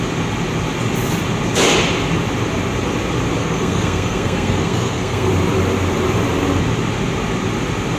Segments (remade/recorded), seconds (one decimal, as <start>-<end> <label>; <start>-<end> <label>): 0.0-3.4 recorded; 3.4-5.3 remade; 5.3-8.0 recorded